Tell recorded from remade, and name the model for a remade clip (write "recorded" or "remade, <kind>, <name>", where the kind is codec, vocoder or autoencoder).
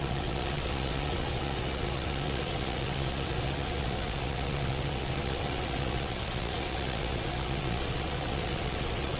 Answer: remade, vocoder, WaveNeXt